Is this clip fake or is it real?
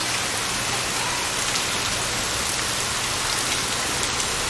real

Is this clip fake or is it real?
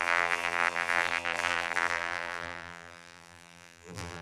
fake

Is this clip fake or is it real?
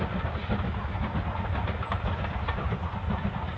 real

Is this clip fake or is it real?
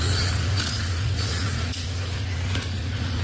fake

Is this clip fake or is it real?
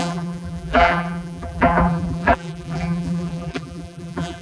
fake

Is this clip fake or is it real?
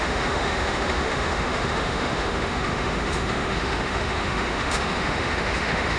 fake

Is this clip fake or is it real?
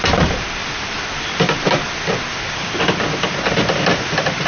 real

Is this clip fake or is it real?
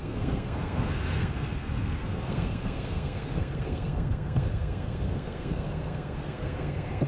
fake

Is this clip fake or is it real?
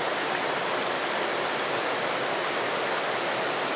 real